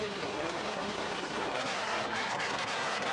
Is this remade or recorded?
remade